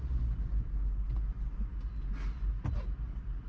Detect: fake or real real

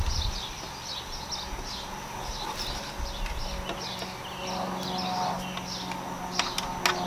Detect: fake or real real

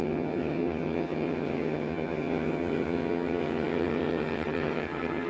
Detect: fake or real fake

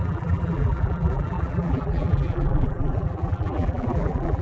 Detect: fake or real fake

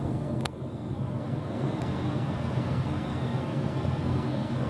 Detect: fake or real fake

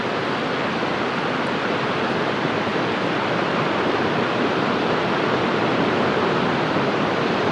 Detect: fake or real fake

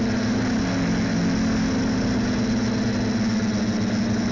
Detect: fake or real real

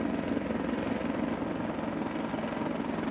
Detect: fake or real real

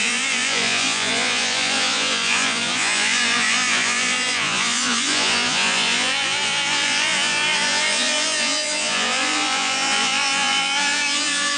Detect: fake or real fake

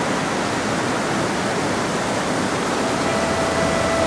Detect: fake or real real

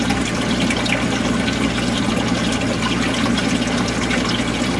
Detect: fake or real real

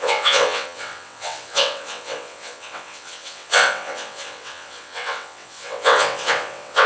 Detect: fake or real fake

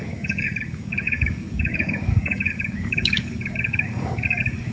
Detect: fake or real fake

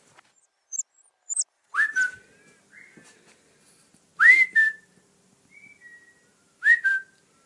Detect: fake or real real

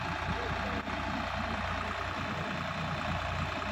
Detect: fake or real real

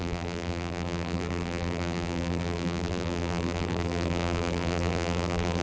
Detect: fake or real fake